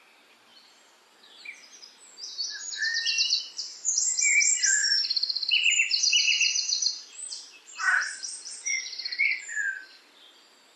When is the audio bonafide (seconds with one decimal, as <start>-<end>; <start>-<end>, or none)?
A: 0.0-4.8; 9.4-10.8